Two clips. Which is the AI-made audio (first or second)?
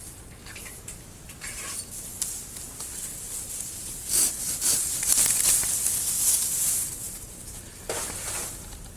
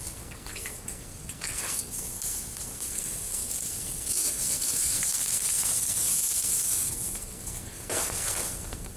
second